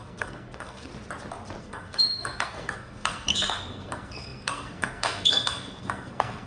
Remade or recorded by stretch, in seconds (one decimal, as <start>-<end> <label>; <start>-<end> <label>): 0.0-0.9 remade; 0.9-1.6 recorded; 1.6-6.5 remade